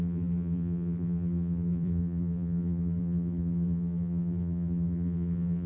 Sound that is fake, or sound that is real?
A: fake